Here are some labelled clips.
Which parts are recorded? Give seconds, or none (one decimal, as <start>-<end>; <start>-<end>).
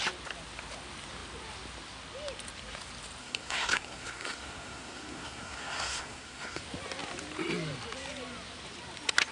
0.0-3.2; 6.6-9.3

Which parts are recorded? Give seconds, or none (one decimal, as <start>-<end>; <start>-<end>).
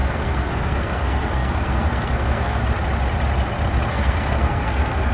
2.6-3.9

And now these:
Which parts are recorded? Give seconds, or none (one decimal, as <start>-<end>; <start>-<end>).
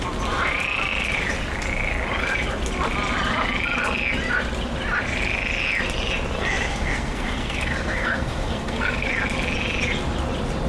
0.0-6.7; 9.1-10.7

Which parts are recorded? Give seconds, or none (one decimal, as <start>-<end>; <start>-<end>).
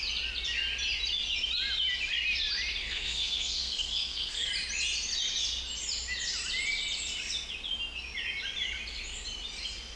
0.0-2.8; 4.5-10.0